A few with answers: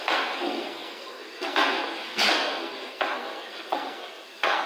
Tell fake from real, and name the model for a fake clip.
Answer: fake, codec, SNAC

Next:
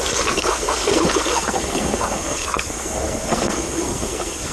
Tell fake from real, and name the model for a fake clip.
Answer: fake, codec, SNAC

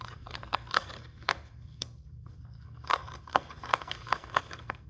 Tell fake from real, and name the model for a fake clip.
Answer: fake, codec, SNAC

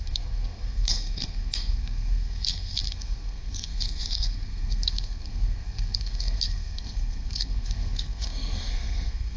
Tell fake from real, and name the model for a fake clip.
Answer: fake, codec, SNAC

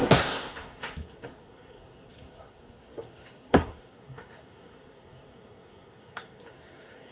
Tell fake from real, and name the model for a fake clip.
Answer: fake, codec, SNAC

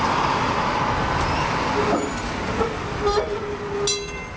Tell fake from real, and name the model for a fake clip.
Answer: real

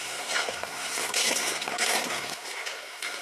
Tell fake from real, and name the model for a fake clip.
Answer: fake, codec, SNAC